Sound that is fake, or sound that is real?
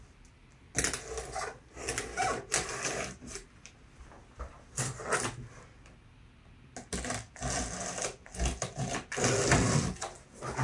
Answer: real